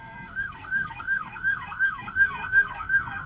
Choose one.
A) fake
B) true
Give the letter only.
A